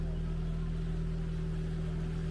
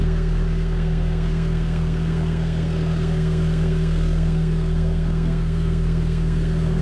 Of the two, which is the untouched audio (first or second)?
first